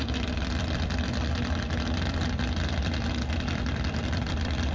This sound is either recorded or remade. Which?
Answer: recorded